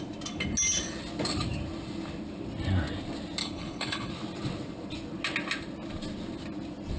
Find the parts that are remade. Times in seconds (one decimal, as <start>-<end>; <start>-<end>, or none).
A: 3.4-4.1